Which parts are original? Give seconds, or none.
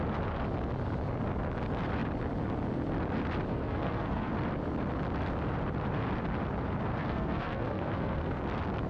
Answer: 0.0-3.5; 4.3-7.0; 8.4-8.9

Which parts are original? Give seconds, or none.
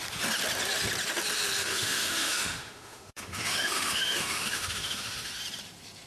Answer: 0.0-1.6; 5.3-6.1